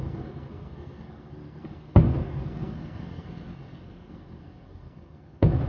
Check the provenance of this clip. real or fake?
fake